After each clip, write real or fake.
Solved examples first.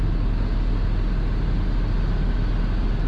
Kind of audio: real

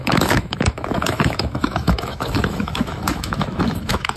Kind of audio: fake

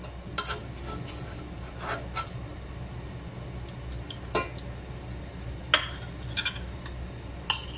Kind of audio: real